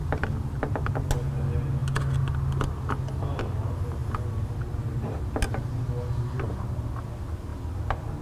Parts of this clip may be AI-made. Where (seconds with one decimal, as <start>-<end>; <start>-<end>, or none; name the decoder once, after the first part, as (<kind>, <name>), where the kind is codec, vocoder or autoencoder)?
0.0-0.6 (vocoder, BigVGAN v2)